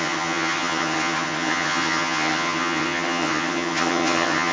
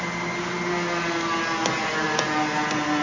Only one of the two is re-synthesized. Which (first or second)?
first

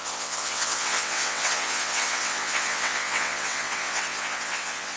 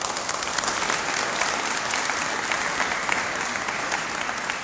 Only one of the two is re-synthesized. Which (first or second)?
first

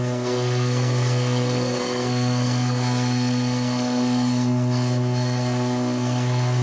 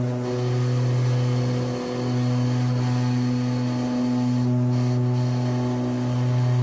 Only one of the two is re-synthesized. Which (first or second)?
first